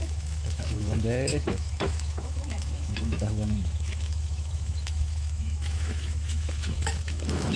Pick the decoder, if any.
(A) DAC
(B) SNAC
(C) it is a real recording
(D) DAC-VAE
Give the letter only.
D